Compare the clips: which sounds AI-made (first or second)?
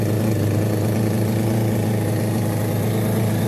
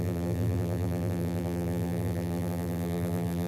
second